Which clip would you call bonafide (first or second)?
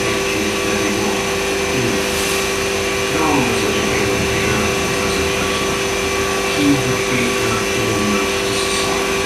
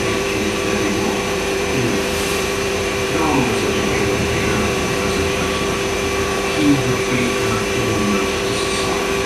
first